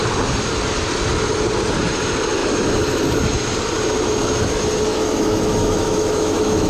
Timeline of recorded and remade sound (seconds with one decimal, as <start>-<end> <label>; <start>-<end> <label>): 0.0-4.9 recorded; 4.9-6.7 remade